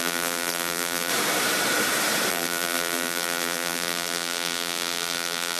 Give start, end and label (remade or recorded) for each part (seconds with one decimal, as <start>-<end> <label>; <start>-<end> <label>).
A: 0.0-1.1 remade; 1.1-2.3 recorded; 2.3-5.6 remade